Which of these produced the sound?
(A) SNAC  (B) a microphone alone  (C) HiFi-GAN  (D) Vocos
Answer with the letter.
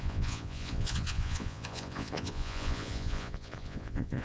D